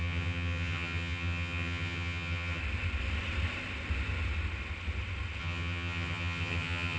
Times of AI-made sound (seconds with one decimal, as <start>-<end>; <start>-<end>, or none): 0.0-2.6; 5.4-7.0